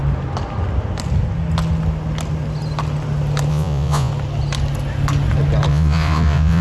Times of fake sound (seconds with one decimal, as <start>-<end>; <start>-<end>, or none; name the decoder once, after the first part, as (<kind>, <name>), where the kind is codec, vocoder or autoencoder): 3.5-4.1 (vocoder, Vocos); 5.7-6.6